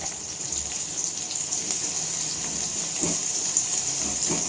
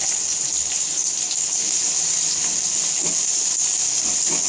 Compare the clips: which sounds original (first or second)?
second